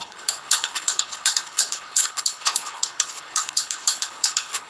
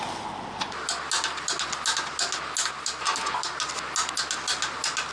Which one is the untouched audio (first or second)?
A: second